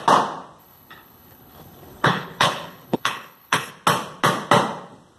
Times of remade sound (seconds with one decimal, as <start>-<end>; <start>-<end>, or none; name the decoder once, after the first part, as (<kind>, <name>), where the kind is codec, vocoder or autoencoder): 0.6-3.7 (codec, HILCodec)